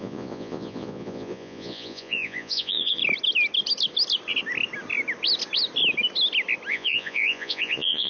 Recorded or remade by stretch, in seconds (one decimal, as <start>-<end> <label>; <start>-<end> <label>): 0.0-3.0 remade; 3.0-6.7 recorded; 6.7-8.1 remade